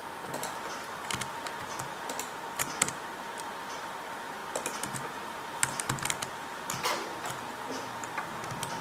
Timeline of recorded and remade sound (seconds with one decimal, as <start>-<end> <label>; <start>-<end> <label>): 0.0-8.8 recorded